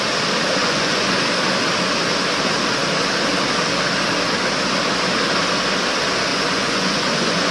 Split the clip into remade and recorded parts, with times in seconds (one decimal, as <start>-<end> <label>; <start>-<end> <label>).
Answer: 0.0-0.6 recorded; 0.6-1.2 remade; 1.2-6.3 recorded; 6.3-7.5 remade